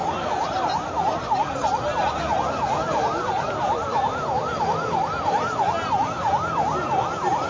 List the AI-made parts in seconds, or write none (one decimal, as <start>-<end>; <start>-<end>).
none